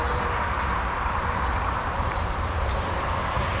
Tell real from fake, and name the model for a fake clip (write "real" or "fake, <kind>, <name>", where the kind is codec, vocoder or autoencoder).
fake, vocoder, BigVGAN v2